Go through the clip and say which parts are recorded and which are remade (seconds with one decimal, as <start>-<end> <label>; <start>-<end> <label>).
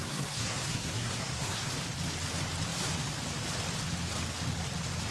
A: 0.0-1.7 remade; 1.7-5.1 recorded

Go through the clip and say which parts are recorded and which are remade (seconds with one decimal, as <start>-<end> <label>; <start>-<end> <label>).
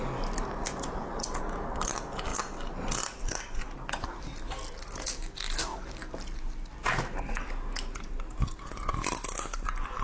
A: 0.0-10.0 recorded